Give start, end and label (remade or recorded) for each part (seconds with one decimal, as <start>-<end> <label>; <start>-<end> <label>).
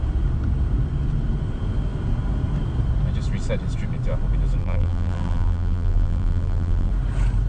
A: 0.0-4.6 recorded; 4.6-6.9 remade; 6.9-7.5 recorded